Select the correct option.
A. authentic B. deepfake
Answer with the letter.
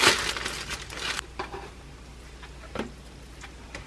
A